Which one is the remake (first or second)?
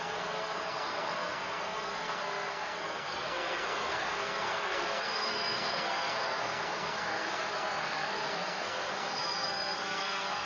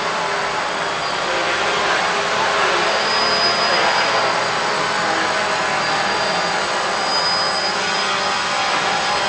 first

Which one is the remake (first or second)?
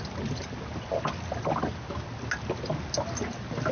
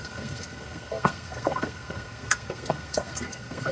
second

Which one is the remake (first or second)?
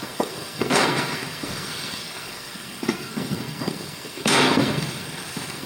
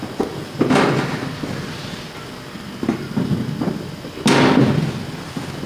first